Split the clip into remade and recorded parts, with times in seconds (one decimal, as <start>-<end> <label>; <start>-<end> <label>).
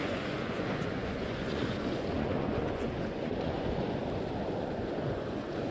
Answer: 0.0-4.0 remade; 4.0-4.6 recorded; 4.6-5.7 remade